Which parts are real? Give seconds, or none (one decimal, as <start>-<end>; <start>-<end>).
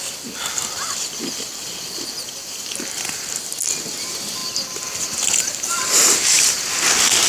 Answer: 0.0-7.3